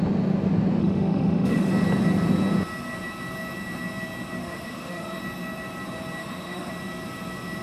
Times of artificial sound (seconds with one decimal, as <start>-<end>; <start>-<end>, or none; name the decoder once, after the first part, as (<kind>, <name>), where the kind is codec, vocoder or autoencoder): 0.8-1.7 (autoencoder, DAC-VAE); 4.4-5.2; 6.2-6.7